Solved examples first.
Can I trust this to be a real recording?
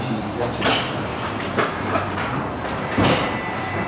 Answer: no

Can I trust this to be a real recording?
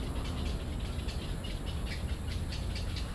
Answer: yes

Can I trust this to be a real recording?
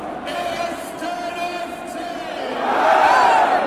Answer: yes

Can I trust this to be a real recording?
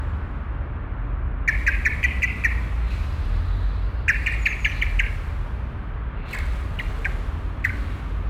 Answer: yes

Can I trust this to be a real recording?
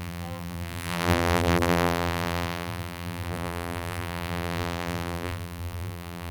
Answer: no